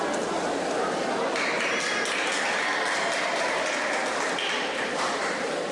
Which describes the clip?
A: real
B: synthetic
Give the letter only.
A